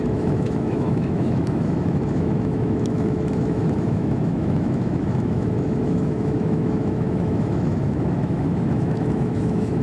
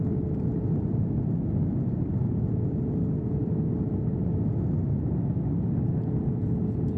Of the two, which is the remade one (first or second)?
first